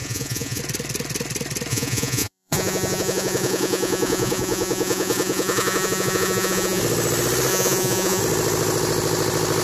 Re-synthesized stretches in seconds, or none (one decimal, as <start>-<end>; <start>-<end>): 0.0-0.6; 1.7-6.8; 7.5-8.2